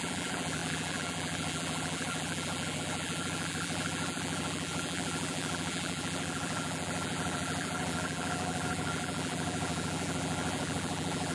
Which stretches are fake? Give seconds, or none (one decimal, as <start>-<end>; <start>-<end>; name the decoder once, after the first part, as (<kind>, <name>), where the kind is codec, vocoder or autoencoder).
0.0-11.3 (vocoder, BigVGAN v2)